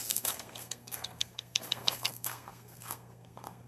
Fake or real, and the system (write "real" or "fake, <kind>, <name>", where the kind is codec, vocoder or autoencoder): fake, codec, SNAC